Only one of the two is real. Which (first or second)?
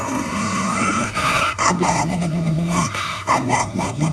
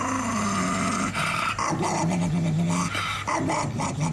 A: second